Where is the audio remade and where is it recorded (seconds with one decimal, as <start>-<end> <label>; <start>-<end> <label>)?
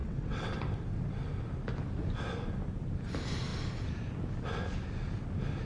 0.0-0.6 remade; 0.6-5.7 recorded